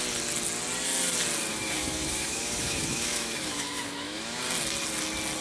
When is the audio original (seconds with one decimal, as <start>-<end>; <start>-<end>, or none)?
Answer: 0.0-1.5; 4.4-5.4